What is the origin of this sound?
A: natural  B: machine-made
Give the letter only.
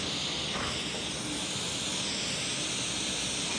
A